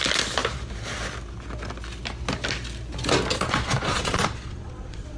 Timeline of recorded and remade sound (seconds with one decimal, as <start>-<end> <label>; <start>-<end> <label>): 0.0-3.3 recorded; 3.3-5.2 remade

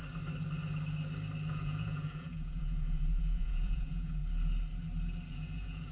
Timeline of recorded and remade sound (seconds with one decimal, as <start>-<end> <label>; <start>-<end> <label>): 0.0-1.5 recorded; 1.5-4.2 remade; 4.2-5.3 recorded; 5.3-5.9 remade

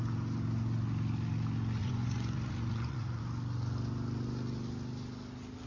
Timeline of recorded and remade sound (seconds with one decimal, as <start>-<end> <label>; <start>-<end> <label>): 0.0-1.8 recorded; 1.8-3.2 remade; 3.2-5.7 recorded

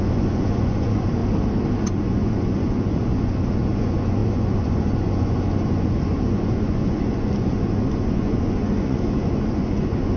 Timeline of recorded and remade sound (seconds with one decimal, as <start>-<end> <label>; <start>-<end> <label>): 0.0-1.2 remade; 1.2-1.8 recorded; 1.8-10.2 remade

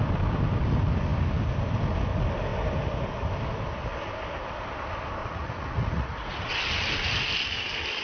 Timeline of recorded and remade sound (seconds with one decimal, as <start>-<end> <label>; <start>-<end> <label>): 0.0-5.2 recorded; 5.2-6.3 remade; 6.3-8.0 recorded

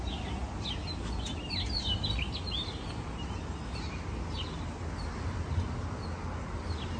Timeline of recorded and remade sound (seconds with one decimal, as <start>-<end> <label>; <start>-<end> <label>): 0.0-7.0 recorded